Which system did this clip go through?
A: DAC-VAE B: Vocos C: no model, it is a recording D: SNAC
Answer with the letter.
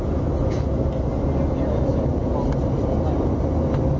C